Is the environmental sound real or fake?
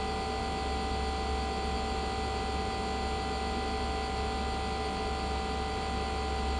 real